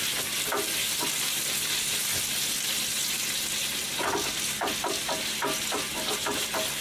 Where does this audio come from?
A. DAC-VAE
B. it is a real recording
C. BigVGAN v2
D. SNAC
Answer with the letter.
B